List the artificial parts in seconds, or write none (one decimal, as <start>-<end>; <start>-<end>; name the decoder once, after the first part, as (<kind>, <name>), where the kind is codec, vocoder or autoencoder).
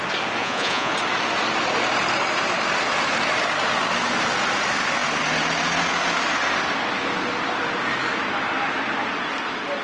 0.4-0.9 (vocoder, Vocos)